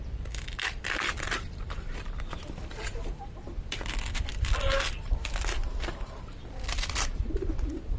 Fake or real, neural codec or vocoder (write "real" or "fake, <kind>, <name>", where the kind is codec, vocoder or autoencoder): fake, vocoder, BigVGAN v2